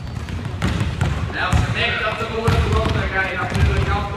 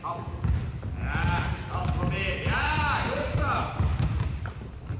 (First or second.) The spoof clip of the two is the first